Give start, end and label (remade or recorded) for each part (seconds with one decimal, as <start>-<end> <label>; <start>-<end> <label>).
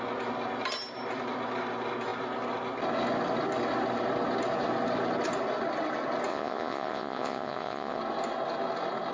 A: 0.0-6.3 recorded; 6.3-8.0 remade; 8.0-9.1 recorded